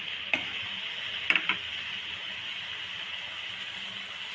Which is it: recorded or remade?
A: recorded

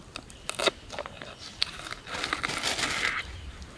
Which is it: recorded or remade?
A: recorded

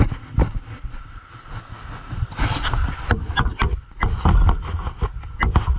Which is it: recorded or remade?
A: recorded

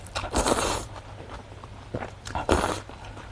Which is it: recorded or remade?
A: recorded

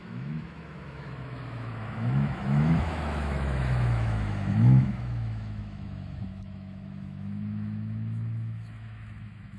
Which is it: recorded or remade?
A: remade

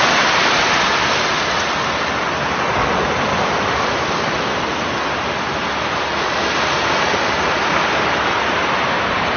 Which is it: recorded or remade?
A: recorded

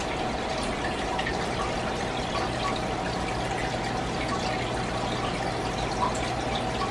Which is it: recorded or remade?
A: recorded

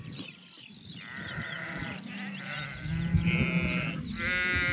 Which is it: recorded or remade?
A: recorded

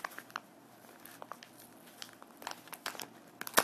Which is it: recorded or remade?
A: recorded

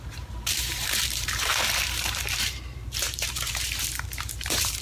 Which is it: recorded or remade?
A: remade